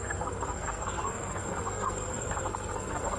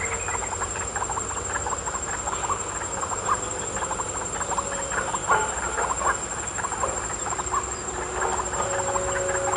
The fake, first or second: first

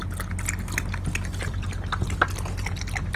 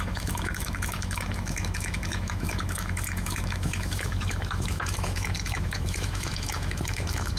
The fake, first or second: second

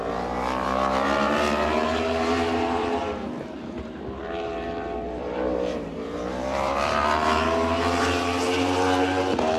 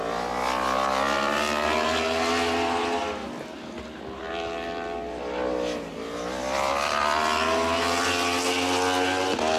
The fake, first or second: first